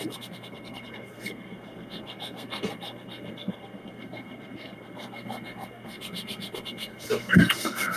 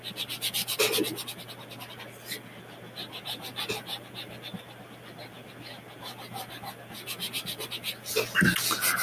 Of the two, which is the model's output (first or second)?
first